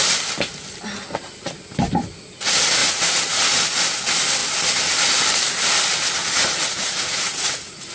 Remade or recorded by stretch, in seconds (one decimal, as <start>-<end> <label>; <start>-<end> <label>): 0.0-2.8 recorded; 2.8-3.3 remade; 3.3-6.2 recorded; 6.2-7.9 remade